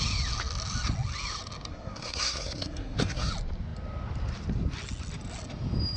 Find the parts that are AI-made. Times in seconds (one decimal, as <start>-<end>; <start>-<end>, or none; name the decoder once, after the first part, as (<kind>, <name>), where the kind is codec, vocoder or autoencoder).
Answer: 1.7-3.3 (codec, SNAC)